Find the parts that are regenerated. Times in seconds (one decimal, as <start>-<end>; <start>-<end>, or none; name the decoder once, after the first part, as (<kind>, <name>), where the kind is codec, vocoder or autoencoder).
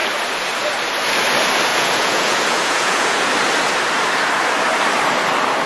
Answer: 1.7-3.3 (vocoder, Vocos)